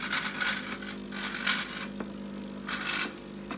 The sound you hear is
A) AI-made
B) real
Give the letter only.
B